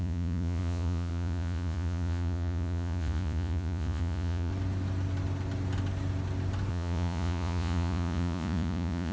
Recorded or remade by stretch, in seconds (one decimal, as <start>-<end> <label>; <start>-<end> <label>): 0.0-4.5 remade; 4.5-6.7 recorded; 6.7-9.1 remade